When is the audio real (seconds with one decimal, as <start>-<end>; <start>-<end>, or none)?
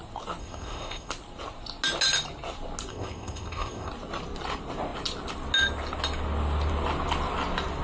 0.0-0.4; 1.1-2.9; 3.9-7.8